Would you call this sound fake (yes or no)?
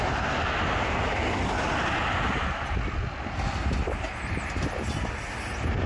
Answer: no